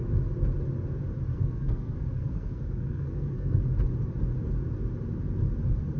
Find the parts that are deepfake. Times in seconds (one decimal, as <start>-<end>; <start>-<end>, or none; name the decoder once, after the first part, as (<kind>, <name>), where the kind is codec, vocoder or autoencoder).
1.3-3.6 (codec, SNAC)